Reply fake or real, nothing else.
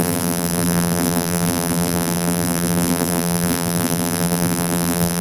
fake